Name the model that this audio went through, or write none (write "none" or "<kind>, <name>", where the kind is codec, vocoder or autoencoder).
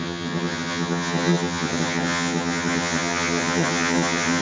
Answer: vocoder, HiFi-GAN